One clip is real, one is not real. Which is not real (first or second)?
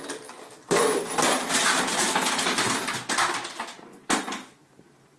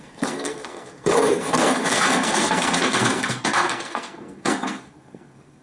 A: second